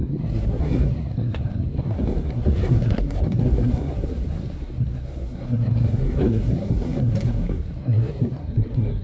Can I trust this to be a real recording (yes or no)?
no